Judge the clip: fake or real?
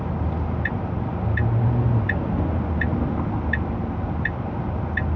real